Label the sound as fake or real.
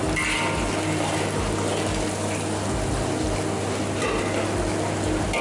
real